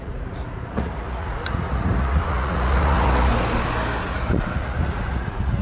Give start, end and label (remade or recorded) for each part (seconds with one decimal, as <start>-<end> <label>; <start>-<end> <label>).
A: 0.0-3.3 remade; 3.3-4.0 recorded; 4.0-5.6 remade